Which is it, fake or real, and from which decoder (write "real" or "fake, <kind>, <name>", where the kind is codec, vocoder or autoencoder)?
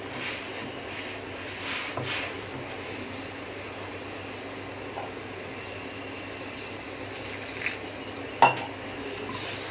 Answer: real